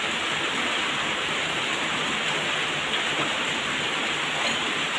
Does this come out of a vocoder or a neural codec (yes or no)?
no